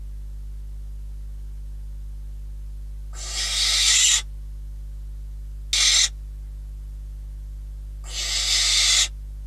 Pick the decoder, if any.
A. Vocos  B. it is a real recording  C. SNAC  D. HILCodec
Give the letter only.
B